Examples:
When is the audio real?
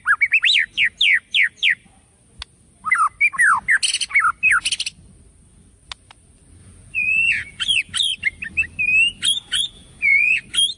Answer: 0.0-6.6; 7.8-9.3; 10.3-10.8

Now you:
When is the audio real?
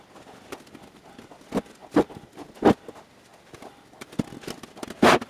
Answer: 0.0-1.8; 2.3-5.3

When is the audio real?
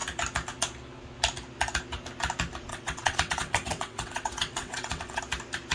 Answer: 0.0-2.7; 5.2-5.7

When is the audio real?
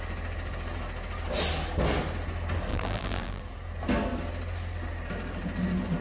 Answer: 0.0-2.7; 3.4-6.0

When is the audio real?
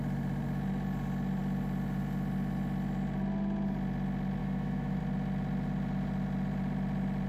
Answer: 0.0-4.4; 5.0-7.3